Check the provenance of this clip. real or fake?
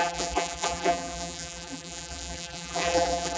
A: fake